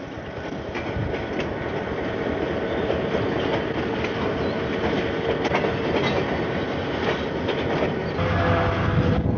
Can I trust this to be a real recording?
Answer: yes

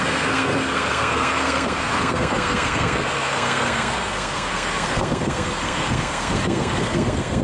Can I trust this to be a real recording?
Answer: no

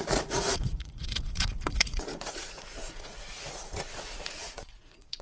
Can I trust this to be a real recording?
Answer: no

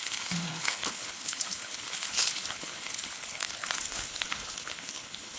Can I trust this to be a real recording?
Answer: no